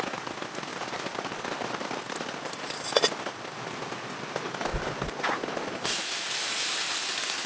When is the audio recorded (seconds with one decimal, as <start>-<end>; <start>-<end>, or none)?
0.0-0.7; 4.3-7.5